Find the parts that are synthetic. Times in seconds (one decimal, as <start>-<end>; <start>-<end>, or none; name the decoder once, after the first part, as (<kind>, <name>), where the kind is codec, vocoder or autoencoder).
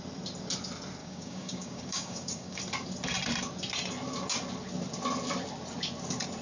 1.0-2.6 (codec, DAC)